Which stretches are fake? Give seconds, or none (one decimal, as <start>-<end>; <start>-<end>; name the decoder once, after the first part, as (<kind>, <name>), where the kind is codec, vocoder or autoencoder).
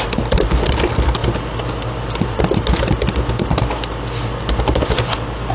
none